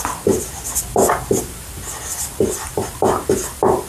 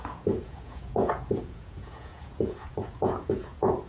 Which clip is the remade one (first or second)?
second